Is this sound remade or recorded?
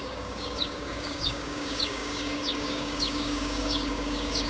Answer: remade